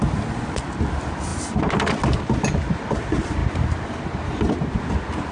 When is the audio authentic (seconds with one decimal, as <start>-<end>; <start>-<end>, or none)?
0.0-5.3